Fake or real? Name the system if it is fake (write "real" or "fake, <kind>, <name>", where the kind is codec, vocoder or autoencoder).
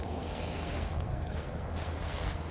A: fake, codec, SNAC